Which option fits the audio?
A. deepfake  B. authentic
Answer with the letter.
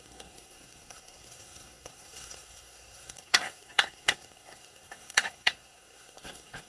A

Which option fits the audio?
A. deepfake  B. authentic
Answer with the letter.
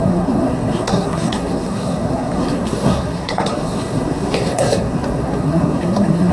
A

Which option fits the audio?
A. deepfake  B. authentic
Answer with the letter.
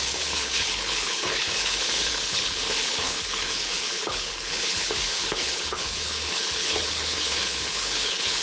A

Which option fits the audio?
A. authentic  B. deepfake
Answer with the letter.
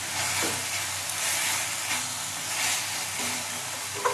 A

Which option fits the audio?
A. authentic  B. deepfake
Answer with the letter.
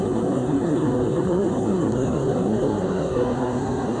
B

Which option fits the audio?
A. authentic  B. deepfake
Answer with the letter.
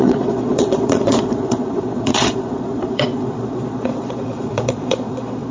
B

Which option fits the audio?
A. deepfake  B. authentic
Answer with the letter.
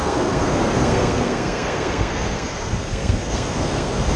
A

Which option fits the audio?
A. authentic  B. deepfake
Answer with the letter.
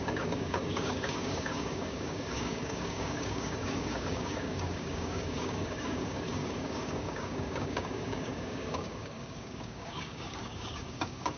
B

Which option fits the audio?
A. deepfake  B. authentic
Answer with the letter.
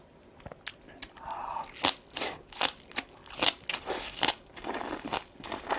B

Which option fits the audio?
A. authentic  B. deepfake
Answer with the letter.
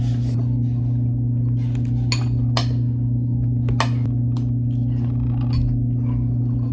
A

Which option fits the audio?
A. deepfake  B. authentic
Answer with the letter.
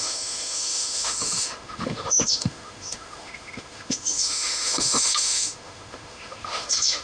A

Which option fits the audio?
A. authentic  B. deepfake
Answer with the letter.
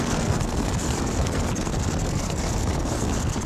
B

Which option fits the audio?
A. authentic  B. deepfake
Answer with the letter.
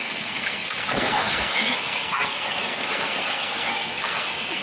B